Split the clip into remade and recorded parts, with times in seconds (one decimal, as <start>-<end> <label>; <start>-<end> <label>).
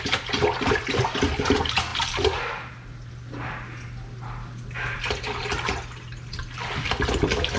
0.0-7.6 recorded